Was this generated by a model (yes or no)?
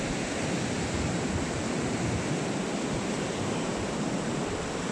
no